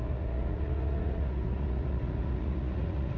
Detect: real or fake fake